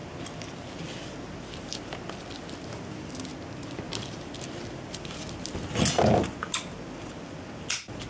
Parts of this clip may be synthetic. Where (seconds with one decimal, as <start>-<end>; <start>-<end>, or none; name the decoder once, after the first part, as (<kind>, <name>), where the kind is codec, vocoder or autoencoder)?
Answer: none